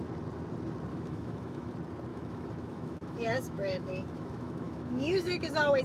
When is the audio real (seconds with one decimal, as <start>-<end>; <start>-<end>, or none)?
0.0-0.9; 1.7-2.1